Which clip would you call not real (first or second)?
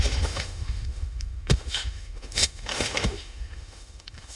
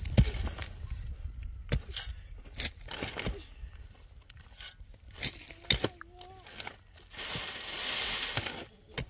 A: first